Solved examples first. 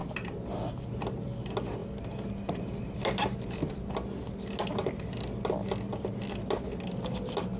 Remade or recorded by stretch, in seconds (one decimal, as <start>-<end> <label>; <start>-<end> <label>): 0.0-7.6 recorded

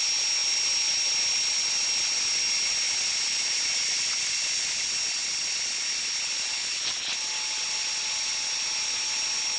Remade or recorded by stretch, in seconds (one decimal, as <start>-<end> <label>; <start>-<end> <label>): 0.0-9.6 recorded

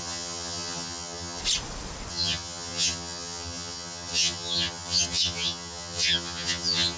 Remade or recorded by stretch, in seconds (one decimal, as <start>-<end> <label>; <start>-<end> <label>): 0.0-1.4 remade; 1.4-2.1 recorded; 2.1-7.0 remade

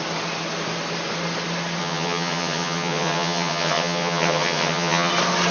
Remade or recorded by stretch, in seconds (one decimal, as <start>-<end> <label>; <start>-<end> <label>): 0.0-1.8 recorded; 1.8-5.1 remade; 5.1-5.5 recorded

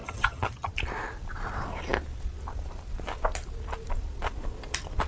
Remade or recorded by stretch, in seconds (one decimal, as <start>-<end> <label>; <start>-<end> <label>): 0.0-0.7 remade; 0.7-5.1 recorded

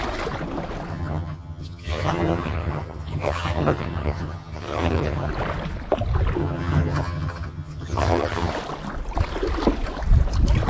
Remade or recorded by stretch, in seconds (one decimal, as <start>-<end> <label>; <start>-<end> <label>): 0.0-0.9 recorded; 0.9-5.3 remade; 5.3-6.4 recorded; 6.4-8.5 remade; 8.5-10.7 recorded